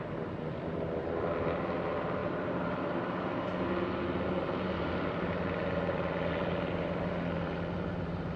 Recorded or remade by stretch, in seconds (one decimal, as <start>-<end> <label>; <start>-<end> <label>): 0.0-3.5 remade; 3.5-4.8 recorded; 4.8-8.4 remade